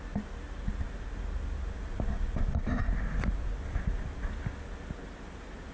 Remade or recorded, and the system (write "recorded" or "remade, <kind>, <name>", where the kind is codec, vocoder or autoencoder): recorded